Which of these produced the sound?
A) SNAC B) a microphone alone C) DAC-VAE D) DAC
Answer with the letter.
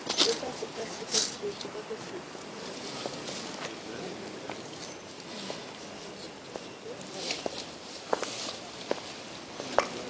B